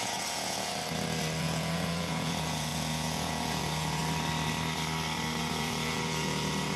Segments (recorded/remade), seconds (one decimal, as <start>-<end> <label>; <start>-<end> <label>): 0.0-0.7 remade; 0.7-1.4 recorded; 1.4-4.0 remade; 4.0-5.4 recorded; 5.4-6.8 remade